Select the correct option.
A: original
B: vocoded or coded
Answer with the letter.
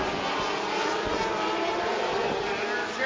A